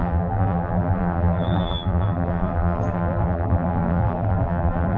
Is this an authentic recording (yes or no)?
no